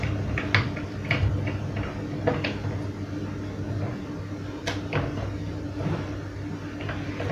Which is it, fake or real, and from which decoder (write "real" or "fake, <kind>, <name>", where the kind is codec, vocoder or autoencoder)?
real